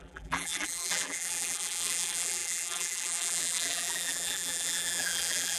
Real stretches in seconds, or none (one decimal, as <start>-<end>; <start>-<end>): none